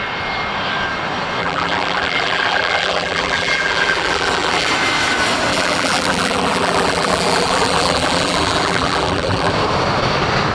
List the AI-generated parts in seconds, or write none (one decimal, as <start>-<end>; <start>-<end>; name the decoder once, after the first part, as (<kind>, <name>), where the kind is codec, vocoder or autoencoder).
1.4-4.7 (vocoder, BigVGAN v2); 5.5-9.5